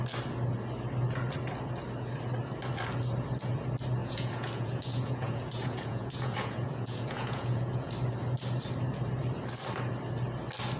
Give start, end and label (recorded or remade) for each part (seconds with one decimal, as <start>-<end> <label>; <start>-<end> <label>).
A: 0.0-4.0 recorded; 4.0-7.9 remade; 7.9-10.8 recorded